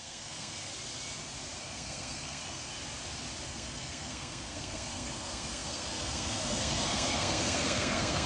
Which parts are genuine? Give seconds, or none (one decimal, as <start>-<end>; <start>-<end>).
0.7-1.6; 2.7-3.5